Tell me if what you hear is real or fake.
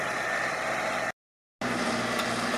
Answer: real